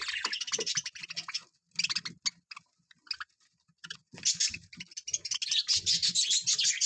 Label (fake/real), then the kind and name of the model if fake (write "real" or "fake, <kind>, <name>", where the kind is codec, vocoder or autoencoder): real